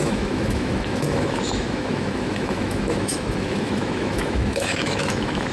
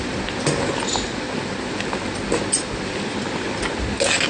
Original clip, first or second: second